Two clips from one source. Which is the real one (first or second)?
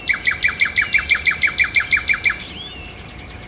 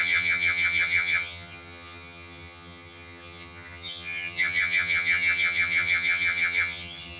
first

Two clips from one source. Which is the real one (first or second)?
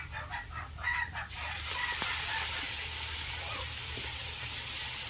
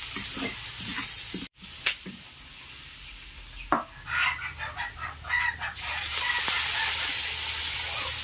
second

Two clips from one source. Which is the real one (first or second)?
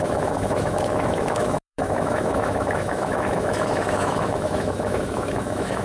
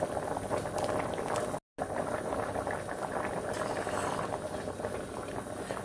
second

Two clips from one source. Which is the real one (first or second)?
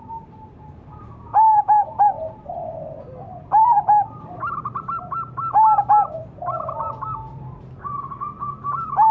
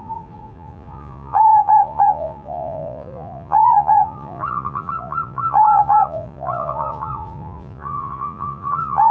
first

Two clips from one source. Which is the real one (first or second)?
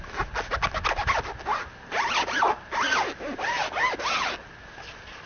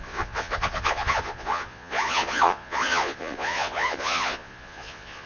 first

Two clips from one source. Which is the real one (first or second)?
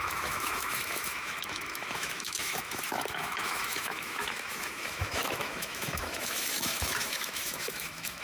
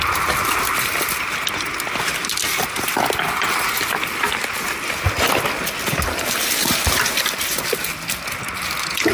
second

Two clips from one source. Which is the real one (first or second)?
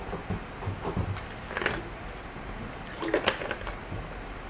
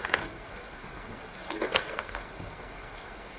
first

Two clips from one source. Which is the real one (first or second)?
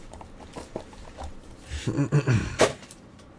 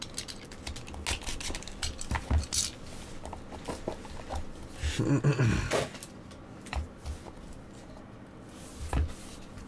second